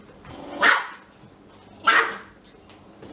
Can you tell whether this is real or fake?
real